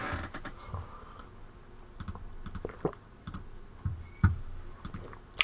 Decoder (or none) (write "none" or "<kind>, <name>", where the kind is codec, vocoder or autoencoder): none